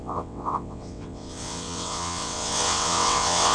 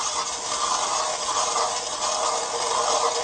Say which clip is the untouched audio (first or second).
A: second